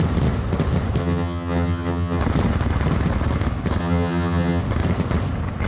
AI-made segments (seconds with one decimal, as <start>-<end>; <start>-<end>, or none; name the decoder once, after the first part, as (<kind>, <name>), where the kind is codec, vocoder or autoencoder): 1.0-2.2 (vocoder, HiFi-GAN); 3.8-4.6